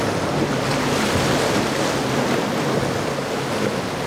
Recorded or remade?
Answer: recorded